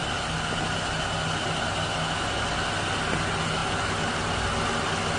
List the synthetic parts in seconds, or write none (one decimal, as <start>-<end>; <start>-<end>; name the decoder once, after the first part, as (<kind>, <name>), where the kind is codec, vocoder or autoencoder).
none